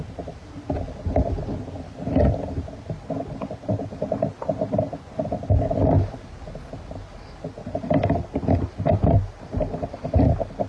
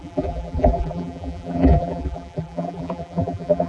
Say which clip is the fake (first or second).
second